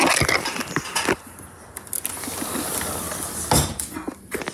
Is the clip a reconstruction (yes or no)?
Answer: no